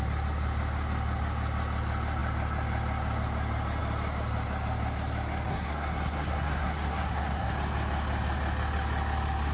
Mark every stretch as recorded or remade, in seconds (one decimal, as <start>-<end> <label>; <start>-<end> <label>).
0.0-5.5 recorded; 5.5-7.5 remade; 7.5-9.5 recorded